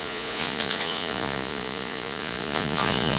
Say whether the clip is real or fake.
fake